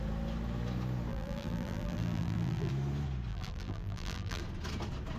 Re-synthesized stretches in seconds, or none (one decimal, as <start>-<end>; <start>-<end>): 1.1-2.7; 3.3-4.4